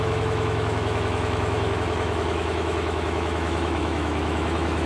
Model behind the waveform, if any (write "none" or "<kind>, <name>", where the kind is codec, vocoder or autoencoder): autoencoder, DAC-VAE